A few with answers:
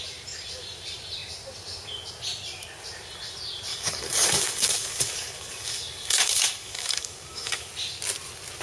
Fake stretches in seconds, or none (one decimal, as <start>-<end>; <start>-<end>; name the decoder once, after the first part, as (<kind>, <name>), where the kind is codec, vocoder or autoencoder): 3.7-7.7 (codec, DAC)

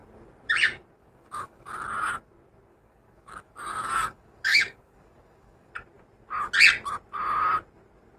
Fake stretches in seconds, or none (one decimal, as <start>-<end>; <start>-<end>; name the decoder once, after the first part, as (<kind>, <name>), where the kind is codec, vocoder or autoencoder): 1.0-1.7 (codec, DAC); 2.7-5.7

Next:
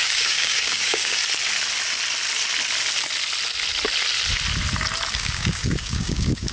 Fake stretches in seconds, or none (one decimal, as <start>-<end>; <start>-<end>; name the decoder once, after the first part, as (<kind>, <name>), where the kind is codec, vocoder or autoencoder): 0.0-1.2 (codec, DAC); 5.1-6.5